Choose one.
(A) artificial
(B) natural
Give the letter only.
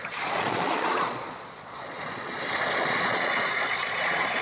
A